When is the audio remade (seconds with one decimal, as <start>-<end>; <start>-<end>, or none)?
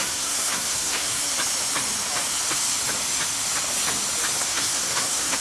0.0-1.2; 4.4-5.4